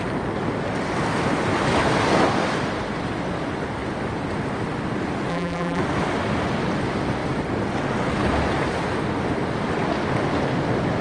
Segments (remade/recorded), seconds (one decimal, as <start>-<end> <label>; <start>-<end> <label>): 0.0-5.3 recorded; 5.3-5.8 remade; 5.8-11.0 recorded